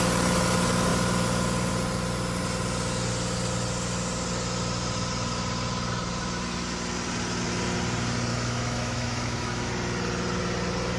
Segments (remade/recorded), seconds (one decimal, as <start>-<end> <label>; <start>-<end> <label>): 0.0-8.3 recorded; 8.3-9.7 remade; 9.7-11.0 recorded

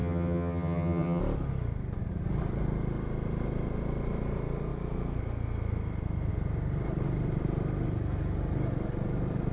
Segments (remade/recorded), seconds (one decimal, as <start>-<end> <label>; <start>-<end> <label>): 0.0-1.2 remade; 1.2-9.5 recorded

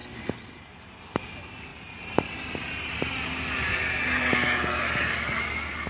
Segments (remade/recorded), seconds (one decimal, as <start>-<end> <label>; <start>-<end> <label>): 0.0-1.0 remade; 1.0-1.7 recorded; 1.7-3.1 remade; 3.1-5.9 recorded